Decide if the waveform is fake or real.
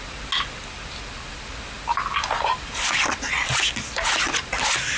real